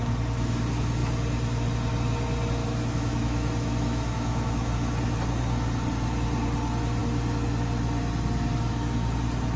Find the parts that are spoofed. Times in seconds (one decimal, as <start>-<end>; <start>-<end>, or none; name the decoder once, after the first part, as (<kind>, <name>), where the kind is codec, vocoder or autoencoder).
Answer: 2.6-4.7 (autoencoder, DAC-VAE)